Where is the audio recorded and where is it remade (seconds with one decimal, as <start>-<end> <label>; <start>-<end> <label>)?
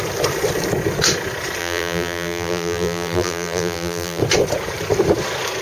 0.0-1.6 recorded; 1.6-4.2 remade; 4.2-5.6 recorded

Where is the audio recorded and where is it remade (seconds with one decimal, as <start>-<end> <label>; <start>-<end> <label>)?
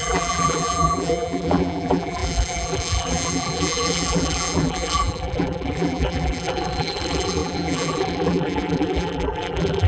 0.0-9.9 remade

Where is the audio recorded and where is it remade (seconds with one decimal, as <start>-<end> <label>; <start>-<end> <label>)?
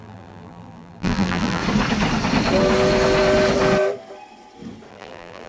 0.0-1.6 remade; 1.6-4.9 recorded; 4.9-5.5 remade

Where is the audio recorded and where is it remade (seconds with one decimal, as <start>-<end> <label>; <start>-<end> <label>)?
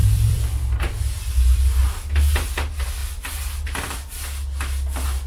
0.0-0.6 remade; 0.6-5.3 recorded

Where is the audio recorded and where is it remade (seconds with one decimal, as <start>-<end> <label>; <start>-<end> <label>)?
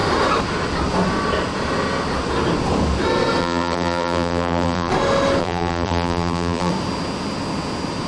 0.0-3.4 recorded; 3.4-4.9 remade; 4.9-5.4 recorded; 5.4-6.7 remade; 6.7-8.1 recorded